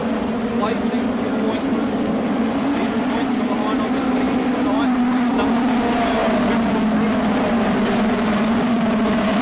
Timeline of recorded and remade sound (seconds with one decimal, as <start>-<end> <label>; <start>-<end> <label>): 0.0-6.2 remade; 6.2-7.3 recorded; 7.3-9.4 remade